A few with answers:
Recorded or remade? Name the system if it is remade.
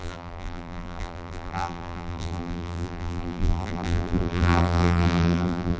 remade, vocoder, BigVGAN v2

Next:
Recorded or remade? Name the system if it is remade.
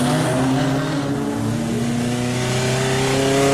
recorded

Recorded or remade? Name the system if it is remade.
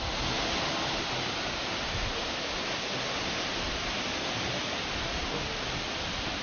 recorded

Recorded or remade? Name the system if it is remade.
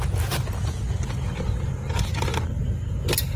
recorded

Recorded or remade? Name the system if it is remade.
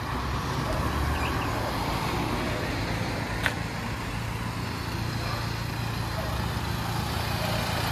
recorded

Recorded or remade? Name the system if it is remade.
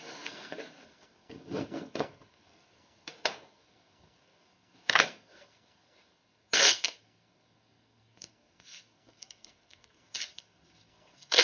remade, codec, SNAC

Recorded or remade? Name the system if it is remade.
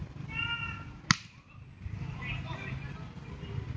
recorded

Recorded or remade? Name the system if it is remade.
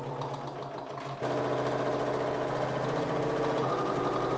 recorded